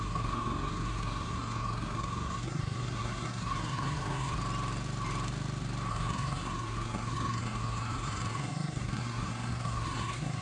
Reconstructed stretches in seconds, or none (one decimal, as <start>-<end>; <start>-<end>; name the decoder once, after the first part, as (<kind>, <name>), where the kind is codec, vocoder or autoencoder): 0.0-4.4 (codec, SNAC); 5.9-10.4